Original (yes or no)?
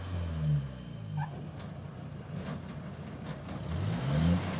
yes